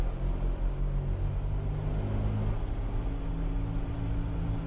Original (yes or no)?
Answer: yes